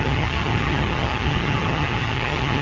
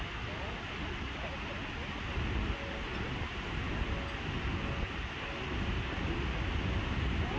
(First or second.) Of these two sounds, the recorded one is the second